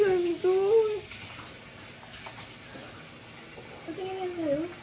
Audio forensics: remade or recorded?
recorded